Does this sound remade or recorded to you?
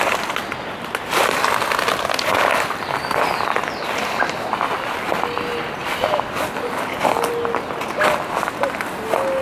recorded